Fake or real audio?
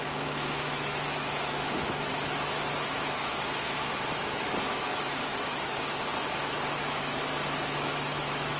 fake